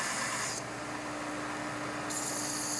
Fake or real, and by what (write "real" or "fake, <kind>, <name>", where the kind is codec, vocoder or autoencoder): real